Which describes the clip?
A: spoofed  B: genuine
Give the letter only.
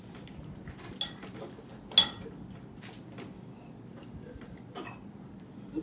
B